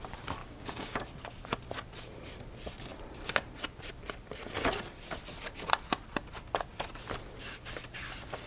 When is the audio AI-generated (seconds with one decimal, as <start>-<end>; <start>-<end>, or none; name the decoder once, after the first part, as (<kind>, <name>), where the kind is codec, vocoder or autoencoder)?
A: 0.4-1.0 (codec, DAC)